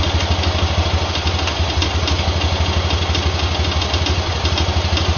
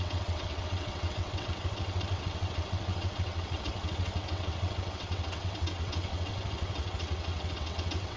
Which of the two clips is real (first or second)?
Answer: first